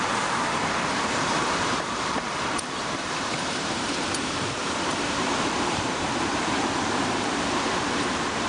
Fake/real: fake